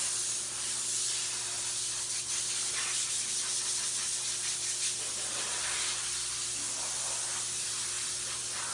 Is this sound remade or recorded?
recorded